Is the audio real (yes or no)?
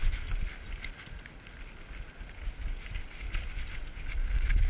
yes